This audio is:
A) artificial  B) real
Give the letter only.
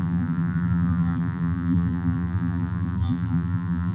A